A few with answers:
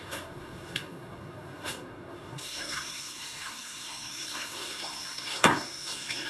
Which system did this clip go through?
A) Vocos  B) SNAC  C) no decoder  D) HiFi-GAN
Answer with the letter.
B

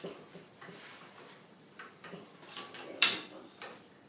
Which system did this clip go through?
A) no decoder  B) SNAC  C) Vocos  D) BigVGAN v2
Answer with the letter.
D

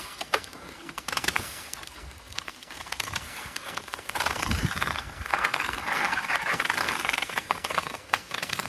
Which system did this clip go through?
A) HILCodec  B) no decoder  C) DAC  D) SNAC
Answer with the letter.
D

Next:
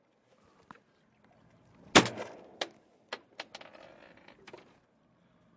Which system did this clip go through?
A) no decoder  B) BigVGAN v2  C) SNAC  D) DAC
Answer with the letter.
A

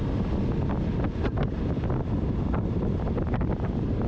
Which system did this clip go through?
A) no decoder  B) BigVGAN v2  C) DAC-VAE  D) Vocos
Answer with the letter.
A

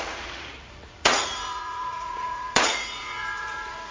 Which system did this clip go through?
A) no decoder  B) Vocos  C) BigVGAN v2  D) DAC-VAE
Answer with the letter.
B